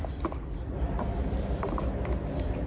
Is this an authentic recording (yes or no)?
yes